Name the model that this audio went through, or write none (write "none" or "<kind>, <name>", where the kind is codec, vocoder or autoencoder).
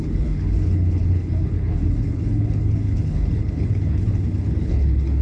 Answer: codec, HILCodec